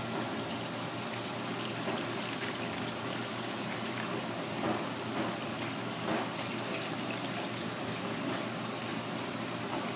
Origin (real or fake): real